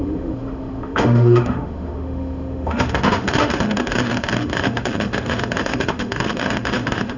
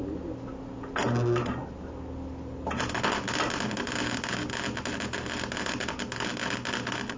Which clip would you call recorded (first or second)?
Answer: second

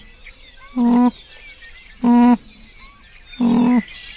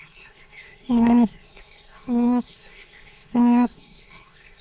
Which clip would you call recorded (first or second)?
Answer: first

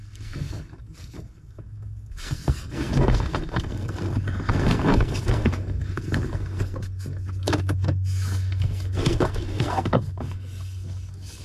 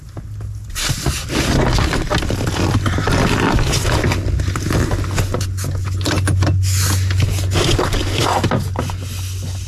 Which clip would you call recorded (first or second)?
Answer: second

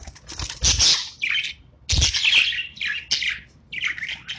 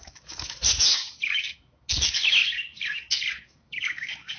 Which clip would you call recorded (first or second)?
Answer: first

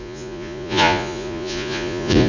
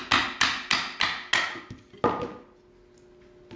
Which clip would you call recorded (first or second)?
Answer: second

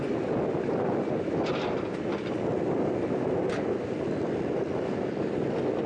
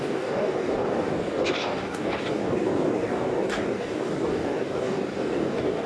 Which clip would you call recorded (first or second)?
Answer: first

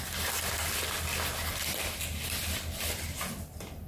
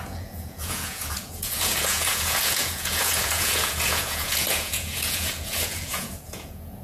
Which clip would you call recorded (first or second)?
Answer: first